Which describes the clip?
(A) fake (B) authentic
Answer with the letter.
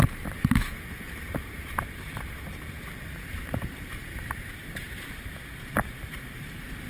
A